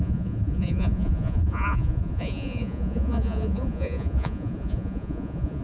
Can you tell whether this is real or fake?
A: fake